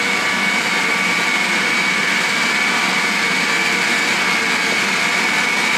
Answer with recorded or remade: recorded